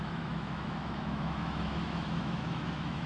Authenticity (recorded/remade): remade